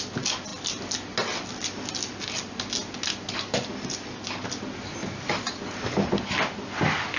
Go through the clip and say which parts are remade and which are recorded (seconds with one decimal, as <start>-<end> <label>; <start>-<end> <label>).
0.0-7.2 recorded